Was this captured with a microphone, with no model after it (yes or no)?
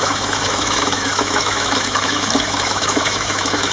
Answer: no